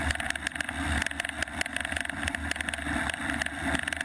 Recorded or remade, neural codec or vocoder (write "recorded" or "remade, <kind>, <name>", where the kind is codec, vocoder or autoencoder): recorded